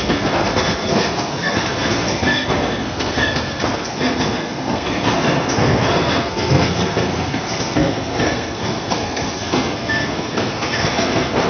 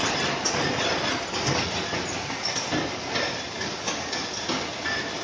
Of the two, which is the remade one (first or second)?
first